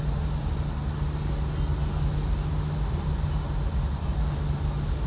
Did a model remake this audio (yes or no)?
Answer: no